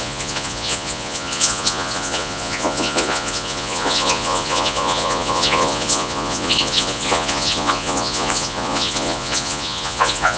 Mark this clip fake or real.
fake